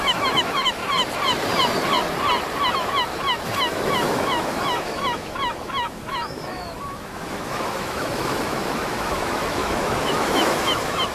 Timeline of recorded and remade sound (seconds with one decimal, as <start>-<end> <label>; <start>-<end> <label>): 0.0-0.8 remade; 0.8-2.7 recorded; 2.7-11.1 remade